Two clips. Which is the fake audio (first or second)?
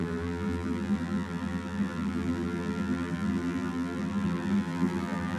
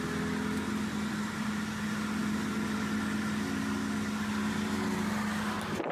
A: first